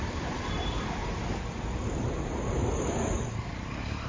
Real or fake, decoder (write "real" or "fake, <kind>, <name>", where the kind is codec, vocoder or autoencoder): real